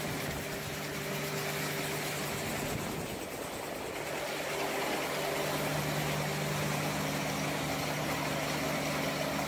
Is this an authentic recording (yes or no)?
yes